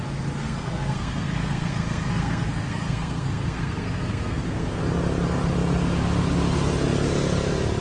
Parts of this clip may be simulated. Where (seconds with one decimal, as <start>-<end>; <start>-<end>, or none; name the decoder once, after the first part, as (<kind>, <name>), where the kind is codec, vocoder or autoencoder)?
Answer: 0.4-4.8 (codec, SNAC)